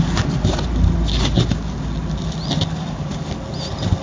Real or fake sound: real